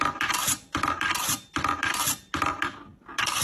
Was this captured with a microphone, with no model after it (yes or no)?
yes